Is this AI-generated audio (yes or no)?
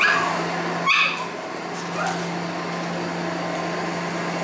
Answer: no